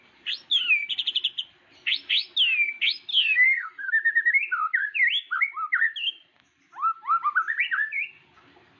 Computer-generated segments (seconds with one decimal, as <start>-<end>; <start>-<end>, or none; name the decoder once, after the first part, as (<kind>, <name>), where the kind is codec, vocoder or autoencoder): 3.1-3.9 (codec, SNAC)